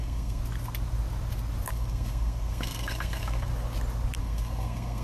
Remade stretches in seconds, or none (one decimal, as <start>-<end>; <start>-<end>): 0.0-0.4; 1.7-3.5; 4.2-5.0